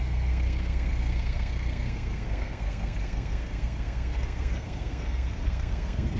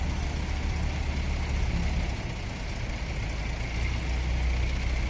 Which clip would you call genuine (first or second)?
second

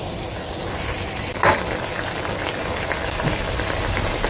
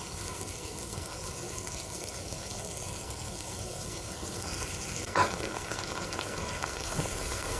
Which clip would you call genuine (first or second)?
first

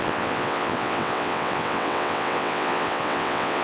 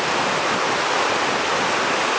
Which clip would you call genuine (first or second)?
second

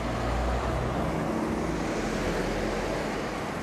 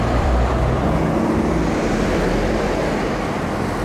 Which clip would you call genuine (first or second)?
first